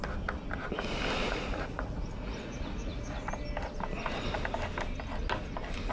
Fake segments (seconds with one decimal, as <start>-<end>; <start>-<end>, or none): 1.2-3.3